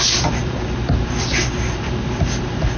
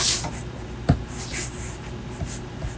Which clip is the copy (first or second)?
first